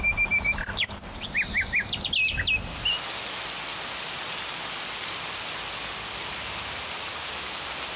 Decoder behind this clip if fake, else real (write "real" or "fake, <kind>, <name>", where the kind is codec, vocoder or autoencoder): real